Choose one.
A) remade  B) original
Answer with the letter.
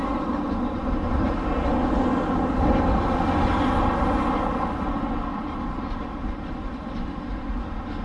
B